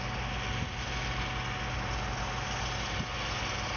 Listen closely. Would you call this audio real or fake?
real